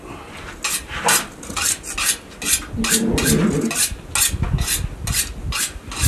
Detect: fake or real real